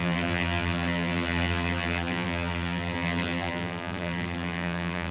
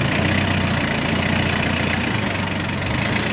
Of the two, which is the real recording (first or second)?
second